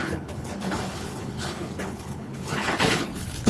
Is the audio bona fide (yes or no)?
no